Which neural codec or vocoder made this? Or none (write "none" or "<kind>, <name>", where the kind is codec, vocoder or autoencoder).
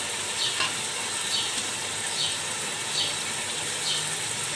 none